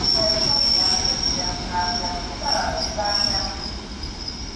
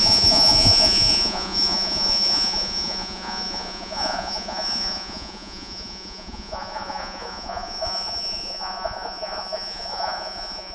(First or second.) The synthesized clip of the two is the second